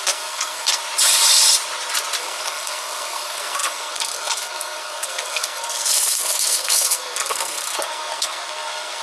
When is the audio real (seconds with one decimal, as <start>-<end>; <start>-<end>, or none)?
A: 0.8-2.2